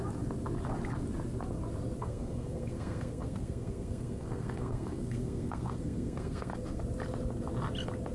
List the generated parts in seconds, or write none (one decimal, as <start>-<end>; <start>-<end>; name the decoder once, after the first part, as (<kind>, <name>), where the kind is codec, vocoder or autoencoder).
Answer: 2.0-6.8 (codec, SNAC)